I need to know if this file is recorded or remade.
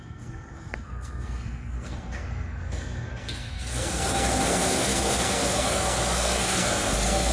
remade